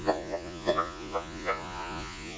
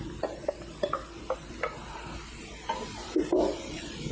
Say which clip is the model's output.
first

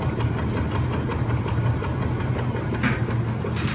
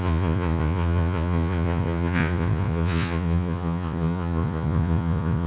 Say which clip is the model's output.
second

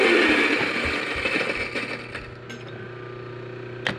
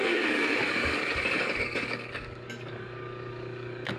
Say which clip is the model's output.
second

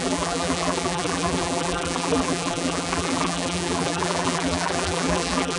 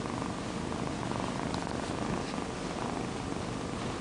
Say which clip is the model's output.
first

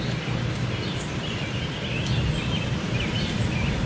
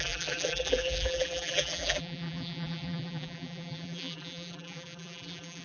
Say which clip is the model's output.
second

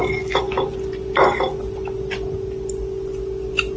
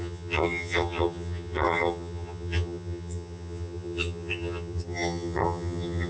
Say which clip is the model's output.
second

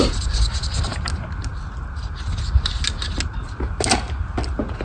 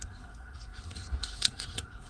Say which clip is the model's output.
second